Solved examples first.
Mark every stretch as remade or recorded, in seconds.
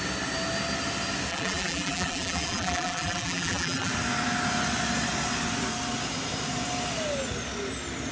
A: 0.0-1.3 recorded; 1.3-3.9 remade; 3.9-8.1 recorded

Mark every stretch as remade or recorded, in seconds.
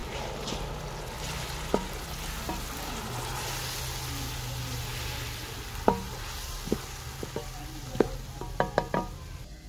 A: 0.0-0.6 remade; 0.6-9.7 recorded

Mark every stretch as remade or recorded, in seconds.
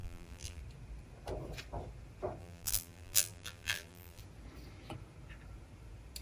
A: 0.0-0.6 remade; 0.6-2.4 recorded; 2.4-4.2 remade; 4.2-6.2 recorded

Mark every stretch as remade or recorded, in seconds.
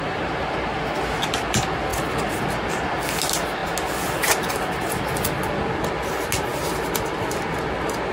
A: 0.0-8.1 recorded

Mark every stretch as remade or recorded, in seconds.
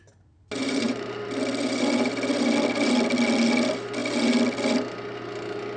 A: 0.0-0.6 recorded; 0.6-1.2 remade; 1.2-5.8 recorded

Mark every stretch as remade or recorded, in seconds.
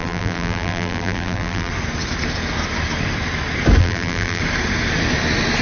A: 0.0-1.7 remade; 1.7-3.8 recorded; 3.8-4.4 remade; 4.4-5.6 recorded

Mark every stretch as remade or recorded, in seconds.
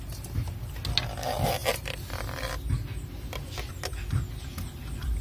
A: 0.0-5.2 recorded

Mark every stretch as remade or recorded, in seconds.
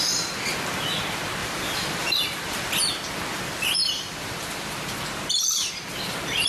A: 0.0-1.4 recorded; 1.4-2.9 remade; 2.9-3.8 recorded; 3.8-5.0 remade; 5.0-6.5 recorded